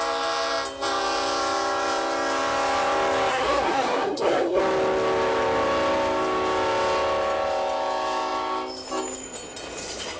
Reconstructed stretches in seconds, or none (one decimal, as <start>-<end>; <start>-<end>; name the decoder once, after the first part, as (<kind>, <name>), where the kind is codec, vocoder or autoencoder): 3.3-4.6 (codec, SNAC)